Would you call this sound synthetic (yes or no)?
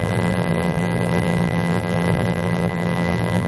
yes